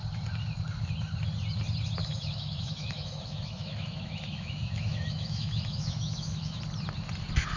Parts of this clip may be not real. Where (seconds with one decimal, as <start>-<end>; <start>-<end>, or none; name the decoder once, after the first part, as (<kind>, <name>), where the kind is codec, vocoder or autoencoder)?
2.0-6.6 (autoencoder, DAC-VAE)